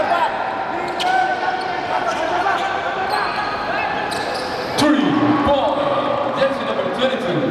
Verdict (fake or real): real